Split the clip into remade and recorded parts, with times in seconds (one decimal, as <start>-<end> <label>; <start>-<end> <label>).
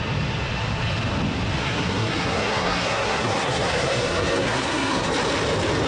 0.0-1.6 recorded; 1.6-5.1 remade; 5.1-5.9 recorded